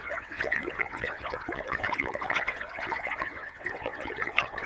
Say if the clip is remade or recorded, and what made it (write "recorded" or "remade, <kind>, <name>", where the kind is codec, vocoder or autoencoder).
remade, vocoder, WaveNeXt